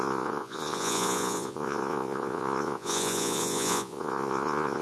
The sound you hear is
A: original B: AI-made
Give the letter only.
B